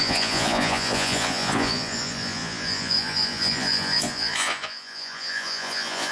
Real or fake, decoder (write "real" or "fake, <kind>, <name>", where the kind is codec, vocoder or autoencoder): fake, vocoder, Vocos